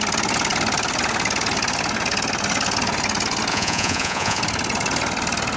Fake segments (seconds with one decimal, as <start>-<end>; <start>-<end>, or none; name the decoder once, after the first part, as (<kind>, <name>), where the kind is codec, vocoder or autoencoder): 3.5-4.4 (vocoder, Vocos)